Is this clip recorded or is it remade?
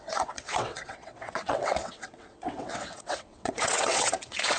remade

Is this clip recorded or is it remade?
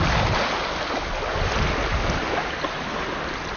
recorded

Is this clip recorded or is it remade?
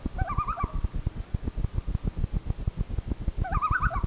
recorded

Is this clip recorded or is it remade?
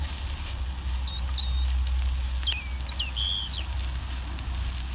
recorded